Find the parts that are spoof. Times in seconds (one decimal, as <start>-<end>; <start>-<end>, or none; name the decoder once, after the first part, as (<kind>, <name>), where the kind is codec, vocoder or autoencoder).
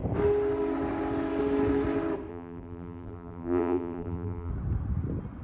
2.3-4.5 (vocoder, BigVGAN v2)